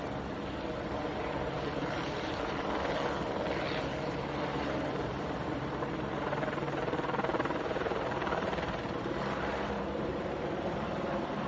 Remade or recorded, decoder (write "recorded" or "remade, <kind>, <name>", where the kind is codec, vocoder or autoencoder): remade, vocoder, BigVGAN v2